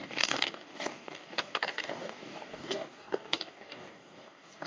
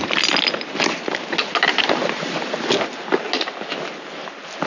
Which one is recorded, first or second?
second